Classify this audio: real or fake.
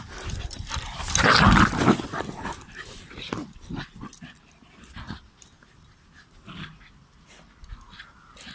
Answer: real